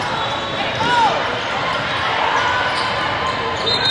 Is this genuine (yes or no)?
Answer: yes